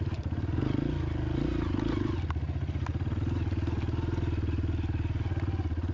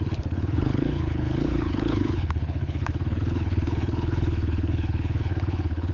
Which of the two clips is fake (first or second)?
second